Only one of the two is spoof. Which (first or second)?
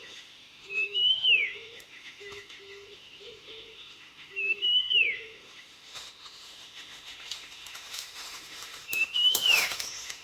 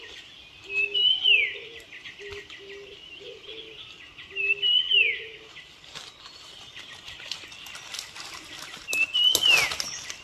first